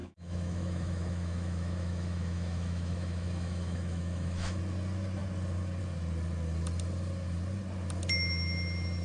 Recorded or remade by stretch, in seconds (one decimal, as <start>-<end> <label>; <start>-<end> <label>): 0.0-4.6 remade; 4.6-9.0 recorded